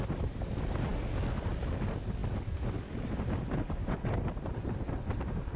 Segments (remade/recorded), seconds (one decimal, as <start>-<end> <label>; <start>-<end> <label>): 0.0-5.6 recorded